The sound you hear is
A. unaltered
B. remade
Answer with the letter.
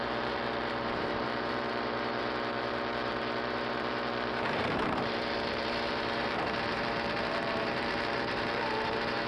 B